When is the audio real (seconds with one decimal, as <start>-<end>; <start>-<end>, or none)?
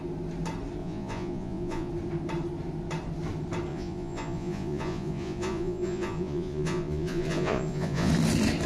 0.0-0.8; 1.9-3.7; 8.1-8.7